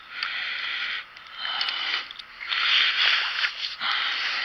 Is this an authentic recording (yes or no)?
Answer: yes